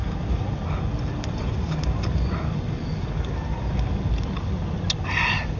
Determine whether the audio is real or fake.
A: real